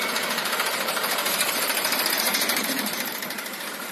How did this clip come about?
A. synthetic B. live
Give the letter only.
A